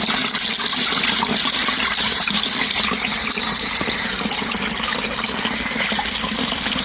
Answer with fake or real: real